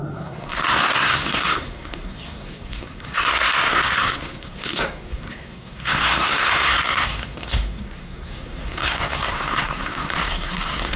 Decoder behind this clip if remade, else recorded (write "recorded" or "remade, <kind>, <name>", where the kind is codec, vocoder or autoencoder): remade, codec, SNAC